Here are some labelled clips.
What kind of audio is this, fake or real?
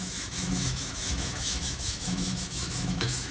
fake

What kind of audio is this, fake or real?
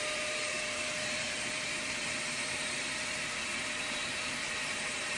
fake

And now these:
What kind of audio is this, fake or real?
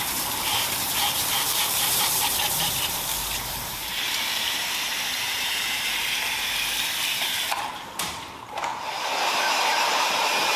fake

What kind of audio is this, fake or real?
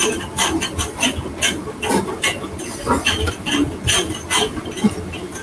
real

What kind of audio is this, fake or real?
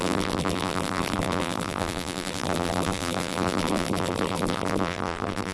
fake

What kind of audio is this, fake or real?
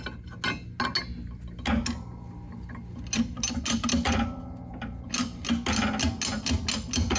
real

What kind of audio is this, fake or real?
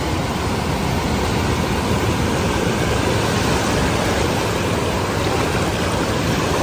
real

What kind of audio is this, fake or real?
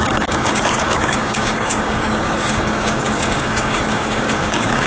fake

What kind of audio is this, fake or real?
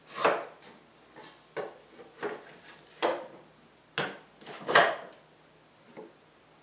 real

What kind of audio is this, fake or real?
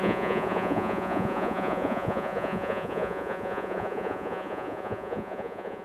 fake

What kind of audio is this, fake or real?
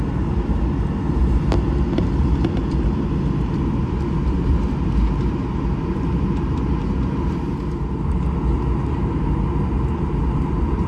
real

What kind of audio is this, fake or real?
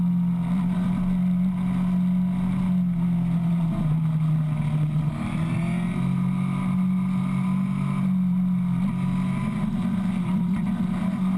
real